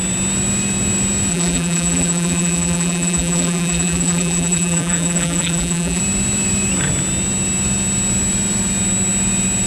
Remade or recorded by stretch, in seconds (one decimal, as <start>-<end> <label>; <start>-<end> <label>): 0.0-1.3 recorded; 1.3-6.0 remade; 6.0-9.7 recorded